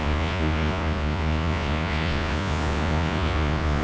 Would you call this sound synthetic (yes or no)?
yes